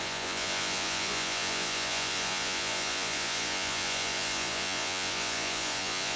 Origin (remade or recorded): remade